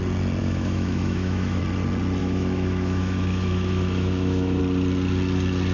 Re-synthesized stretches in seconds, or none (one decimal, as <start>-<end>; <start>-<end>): 0.4-1.6; 2.2-4.6